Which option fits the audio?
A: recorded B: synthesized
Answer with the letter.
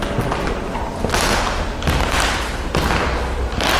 A